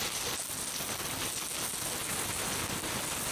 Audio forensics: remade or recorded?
recorded